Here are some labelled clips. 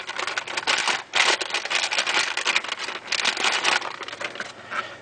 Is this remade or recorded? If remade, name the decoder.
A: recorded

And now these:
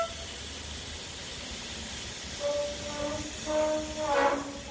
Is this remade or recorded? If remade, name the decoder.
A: recorded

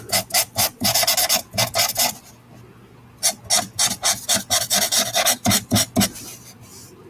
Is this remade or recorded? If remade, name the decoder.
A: recorded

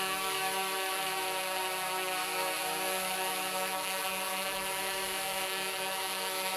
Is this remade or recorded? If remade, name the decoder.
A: remade, autoencoder, DAC-VAE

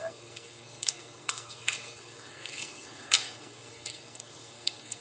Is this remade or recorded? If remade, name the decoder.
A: remade, codec, SNAC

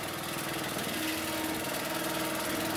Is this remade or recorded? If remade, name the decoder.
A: recorded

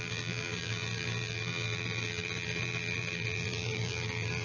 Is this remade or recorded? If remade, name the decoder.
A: remade, vocoder, BigVGAN v2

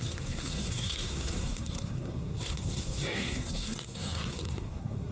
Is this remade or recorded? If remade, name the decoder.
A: remade, codec, SNAC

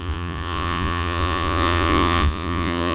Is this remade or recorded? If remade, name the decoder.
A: remade, vocoder, Vocos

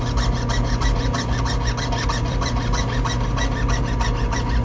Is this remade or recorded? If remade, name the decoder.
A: recorded